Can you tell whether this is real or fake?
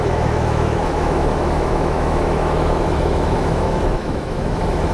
fake